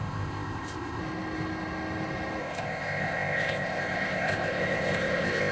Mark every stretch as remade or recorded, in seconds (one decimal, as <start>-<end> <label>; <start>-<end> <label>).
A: 0.0-1.0 remade; 1.0-2.4 recorded; 2.4-5.5 remade